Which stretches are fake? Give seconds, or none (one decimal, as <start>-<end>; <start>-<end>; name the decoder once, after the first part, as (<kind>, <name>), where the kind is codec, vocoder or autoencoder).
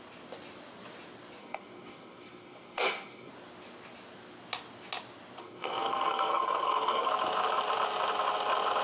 1.4-3.3 (codec, SNAC); 5.4-7.1